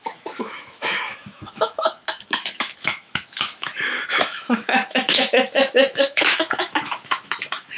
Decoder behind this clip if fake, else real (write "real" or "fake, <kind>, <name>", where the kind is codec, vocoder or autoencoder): fake, autoencoder, DAC-VAE